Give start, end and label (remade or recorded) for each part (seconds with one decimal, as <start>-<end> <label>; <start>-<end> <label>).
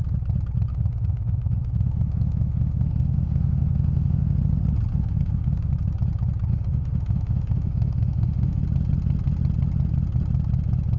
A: 0.0-0.7 recorded; 0.7-4.4 remade; 4.4-4.9 recorded; 4.9-5.7 remade; 5.7-6.5 recorded; 6.5-8.6 remade; 8.6-11.0 recorded